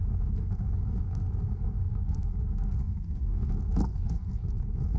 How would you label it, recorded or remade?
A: remade